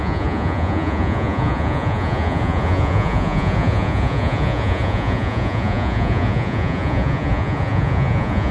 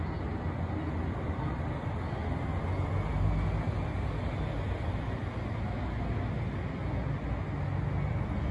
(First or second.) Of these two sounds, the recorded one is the second